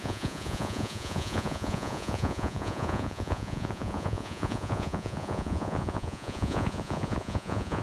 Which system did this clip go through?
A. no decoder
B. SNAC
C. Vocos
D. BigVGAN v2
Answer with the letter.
C